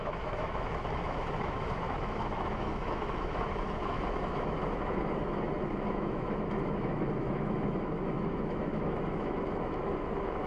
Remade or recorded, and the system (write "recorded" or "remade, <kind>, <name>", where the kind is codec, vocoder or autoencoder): remade, autoencoder, DAC-VAE